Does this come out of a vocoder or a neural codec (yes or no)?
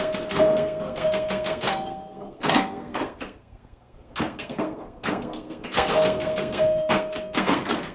yes